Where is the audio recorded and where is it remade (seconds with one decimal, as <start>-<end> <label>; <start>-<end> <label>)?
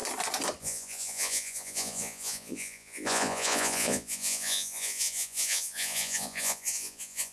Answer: 0.0-0.6 recorded; 0.6-7.3 remade